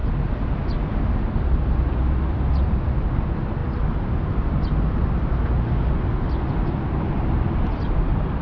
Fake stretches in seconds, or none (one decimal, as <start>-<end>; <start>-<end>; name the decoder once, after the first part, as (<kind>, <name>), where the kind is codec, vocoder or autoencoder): none